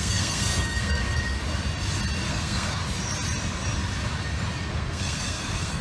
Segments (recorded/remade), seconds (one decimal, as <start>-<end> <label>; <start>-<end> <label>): 0.0-1.4 remade; 1.4-2.3 recorded; 2.3-2.8 remade; 2.8-4.7 recorded; 4.7-5.8 remade